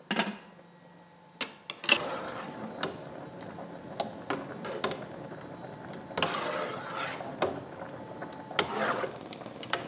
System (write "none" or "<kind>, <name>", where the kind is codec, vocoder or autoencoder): none